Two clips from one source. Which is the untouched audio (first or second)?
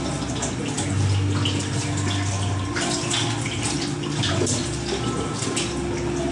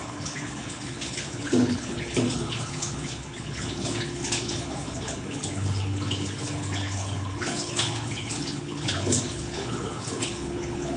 first